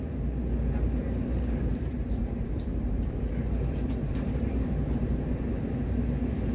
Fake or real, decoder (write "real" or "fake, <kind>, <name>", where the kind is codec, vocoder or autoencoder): fake, vocoder, BigVGAN v2